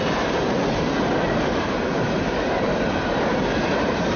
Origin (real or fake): fake